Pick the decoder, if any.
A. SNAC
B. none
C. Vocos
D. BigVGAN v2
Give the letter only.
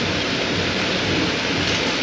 B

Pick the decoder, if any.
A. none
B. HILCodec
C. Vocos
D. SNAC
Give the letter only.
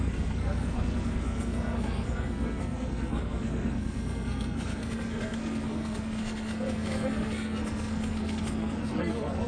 D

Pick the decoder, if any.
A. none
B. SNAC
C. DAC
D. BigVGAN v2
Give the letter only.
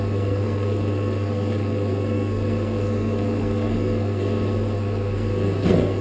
B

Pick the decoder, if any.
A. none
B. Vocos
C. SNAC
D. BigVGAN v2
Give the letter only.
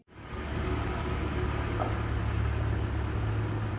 A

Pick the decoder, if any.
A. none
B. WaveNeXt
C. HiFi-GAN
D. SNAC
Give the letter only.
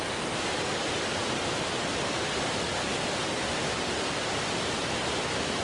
A